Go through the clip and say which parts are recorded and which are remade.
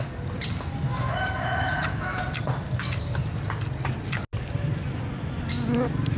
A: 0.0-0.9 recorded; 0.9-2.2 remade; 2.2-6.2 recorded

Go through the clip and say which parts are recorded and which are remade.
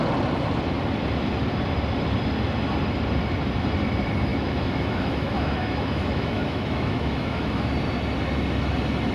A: 0.0-4.3 recorded; 4.3-7.7 remade; 7.7-9.1 recorded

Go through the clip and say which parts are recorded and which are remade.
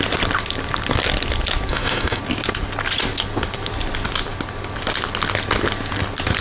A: 0.0-1.7 recorded; 1.7-2.2 remade; 2.2-6.4 recorded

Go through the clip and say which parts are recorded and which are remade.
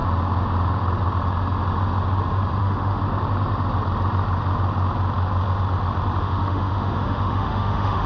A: 0.0-2.6 recorded; 2.6-3.0 remade; 3.0-6.2 recorded; 6.2-8.1 remade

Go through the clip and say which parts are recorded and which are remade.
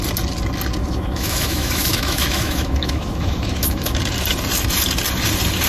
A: 0.0-0.8 recorded; 0.8-4.0 remade; 4.0-5.7 recorded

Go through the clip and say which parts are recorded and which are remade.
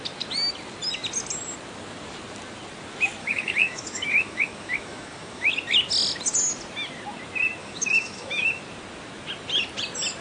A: 0.0-3.2 recorded; 3.2-5.5 remade; 5.5-7.6 recorded; 7.6-8.6 remade; 8.6-10.2 recorded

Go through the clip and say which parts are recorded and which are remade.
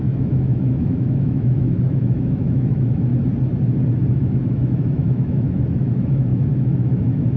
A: 0.0-3.1 remade; 3.1-4.1 recorded; 4.1-7.4 remade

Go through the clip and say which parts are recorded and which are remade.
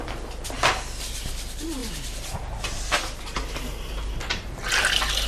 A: 0.0-5.3 recorded